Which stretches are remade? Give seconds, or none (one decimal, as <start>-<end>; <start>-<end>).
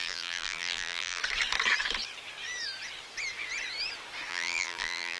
0.0-1.2; 4.3-5.2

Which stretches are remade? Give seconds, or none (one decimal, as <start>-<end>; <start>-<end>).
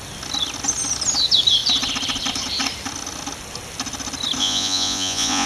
4.4-5.5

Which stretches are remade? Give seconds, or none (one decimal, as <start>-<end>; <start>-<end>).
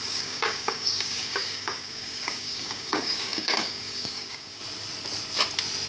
0.0-4.6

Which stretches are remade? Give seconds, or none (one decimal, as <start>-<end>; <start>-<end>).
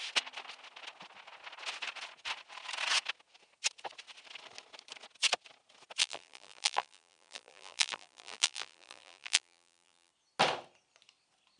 6.0-10.1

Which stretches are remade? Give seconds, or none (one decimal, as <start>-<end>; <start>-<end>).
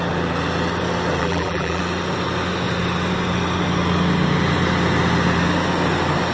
1.2-1.8